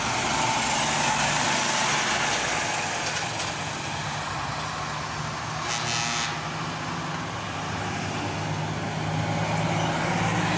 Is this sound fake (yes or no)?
no